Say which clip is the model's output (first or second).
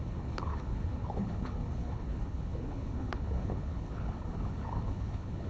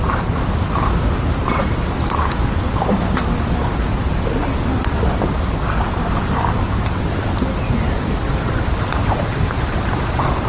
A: first